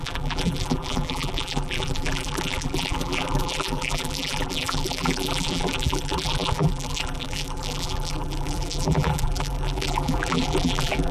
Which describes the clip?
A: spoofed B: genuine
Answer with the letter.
A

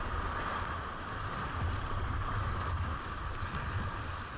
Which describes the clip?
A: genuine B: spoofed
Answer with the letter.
A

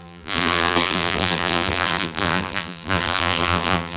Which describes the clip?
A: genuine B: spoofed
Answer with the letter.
B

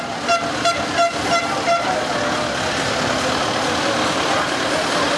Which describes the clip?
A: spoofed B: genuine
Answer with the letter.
B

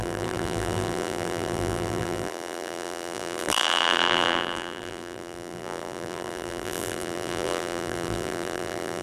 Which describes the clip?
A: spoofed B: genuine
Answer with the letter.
A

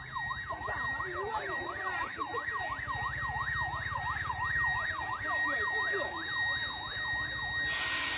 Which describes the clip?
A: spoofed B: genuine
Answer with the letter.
B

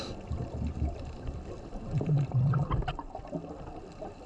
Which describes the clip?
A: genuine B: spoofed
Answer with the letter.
B